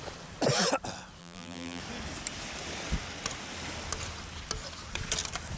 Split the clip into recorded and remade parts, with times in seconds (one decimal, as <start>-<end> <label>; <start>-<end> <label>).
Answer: 0.0-1.2 recorded; 1.2-1.8 remade; 1.8-5.6 recorded